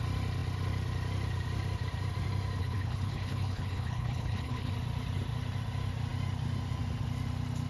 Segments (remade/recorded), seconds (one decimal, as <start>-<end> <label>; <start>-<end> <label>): 0.0-2.6 recorded; 2.6-4.7 remade; 4.7-7.7 recorded